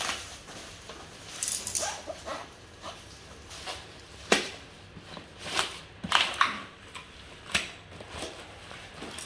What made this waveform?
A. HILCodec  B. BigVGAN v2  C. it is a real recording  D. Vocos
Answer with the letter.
B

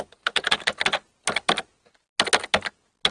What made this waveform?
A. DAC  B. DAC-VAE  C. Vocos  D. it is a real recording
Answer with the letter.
D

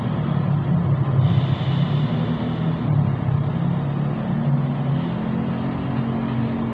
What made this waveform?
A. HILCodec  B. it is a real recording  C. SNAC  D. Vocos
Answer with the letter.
B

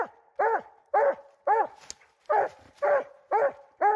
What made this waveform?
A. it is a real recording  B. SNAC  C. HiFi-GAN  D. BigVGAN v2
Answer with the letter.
A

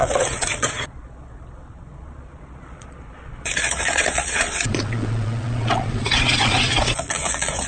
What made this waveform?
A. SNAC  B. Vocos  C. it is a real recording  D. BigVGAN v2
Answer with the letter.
B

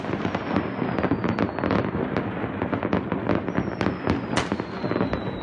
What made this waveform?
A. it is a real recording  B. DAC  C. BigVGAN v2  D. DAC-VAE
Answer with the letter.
A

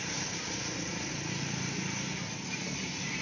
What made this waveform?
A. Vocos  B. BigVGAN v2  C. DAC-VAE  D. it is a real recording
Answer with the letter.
B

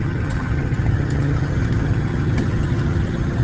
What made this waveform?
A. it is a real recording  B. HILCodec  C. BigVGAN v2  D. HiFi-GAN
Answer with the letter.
D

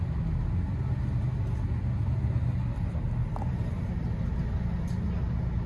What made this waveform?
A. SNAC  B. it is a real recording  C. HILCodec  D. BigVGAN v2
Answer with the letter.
B